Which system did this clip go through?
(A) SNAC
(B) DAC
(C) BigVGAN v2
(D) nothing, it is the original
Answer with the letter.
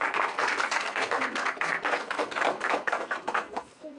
A